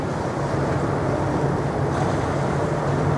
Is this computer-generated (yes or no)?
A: no